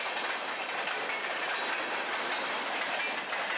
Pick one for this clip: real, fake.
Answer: real